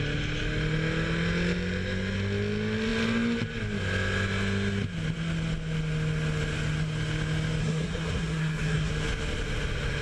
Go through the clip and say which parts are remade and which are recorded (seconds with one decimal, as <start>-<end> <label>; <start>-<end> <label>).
0.0-7.6 recorded; 7.6-8.9 remade; 8.9-10.0 recorded